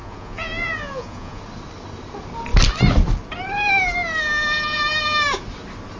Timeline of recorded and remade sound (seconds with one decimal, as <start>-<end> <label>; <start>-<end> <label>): 0.0-1.4 remade; 1.4-6.0 recorded